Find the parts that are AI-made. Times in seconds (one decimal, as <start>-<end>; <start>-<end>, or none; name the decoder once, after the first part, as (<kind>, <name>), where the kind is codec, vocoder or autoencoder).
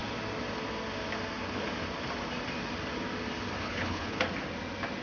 3.6-4.2 (codec, HILCodec)